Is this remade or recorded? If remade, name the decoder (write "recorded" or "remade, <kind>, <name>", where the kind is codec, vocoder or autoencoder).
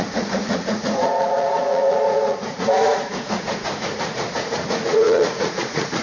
remade, vocoder, Vocos